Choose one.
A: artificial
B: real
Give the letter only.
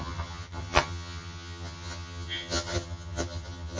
A